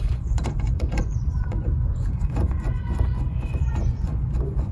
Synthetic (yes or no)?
yes